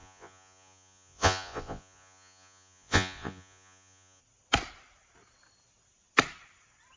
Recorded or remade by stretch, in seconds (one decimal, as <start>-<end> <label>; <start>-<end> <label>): 0.0-4.2 remade; 4.2-7.0 recorded